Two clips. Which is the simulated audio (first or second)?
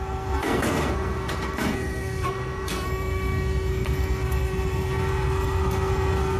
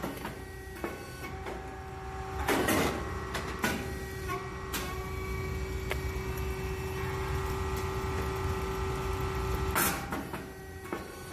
first